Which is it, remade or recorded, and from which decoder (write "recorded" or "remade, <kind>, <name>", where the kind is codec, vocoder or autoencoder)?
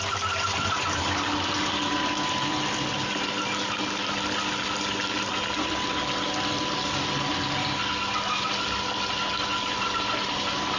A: recorded